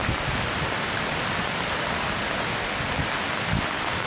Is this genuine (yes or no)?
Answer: yes